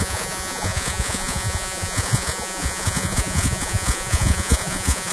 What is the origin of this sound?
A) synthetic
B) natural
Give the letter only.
A